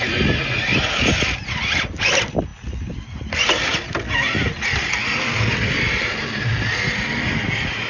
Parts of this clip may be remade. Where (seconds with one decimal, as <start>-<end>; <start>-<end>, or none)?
none